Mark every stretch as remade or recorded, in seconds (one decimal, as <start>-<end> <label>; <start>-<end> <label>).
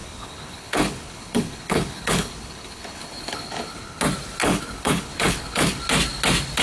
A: 0.0-4.0 remade; 4.0-4.4 recorded; 4.4-5.8 remade; 5.8-6.6 recorded